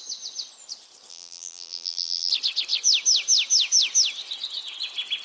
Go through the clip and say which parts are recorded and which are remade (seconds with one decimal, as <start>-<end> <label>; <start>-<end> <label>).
0.0-1.1 recorded; 1.1-2.3 remade; 2.3-5.2 recorded